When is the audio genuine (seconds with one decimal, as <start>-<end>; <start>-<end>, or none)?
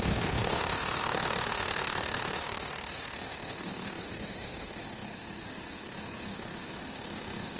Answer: none